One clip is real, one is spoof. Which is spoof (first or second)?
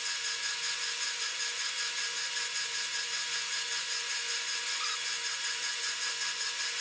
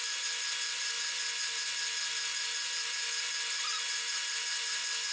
first